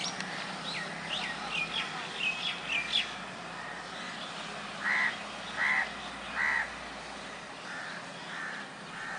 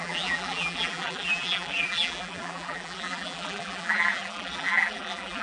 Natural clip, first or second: first